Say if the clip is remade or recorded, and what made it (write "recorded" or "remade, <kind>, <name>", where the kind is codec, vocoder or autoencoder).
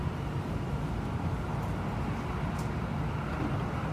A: recorded